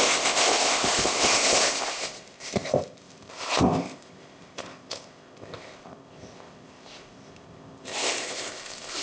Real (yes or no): no